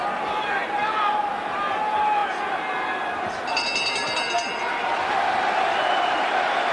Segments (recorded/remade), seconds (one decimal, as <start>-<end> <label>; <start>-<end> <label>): 0.0-6.7 recorded